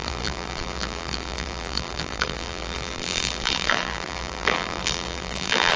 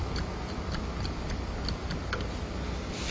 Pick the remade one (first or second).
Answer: first